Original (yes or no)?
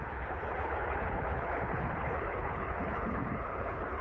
no